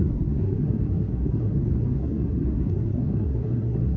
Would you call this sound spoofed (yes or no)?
yes